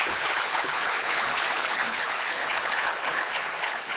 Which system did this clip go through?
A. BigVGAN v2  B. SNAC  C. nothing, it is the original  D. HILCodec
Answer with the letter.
D